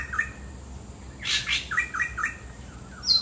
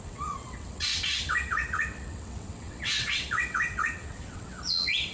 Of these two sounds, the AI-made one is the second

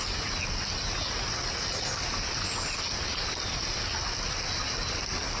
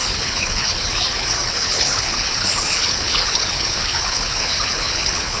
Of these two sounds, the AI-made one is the second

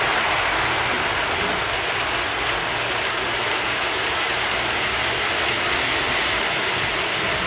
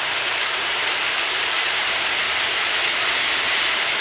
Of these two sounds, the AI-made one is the second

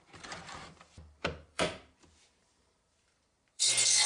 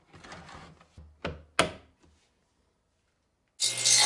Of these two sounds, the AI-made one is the first